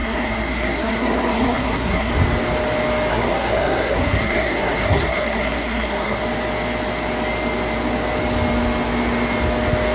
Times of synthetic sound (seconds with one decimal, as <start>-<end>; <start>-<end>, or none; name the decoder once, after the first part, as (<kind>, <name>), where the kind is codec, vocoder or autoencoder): 0.0-2.1 (codec, SNAC); 3.1-6.2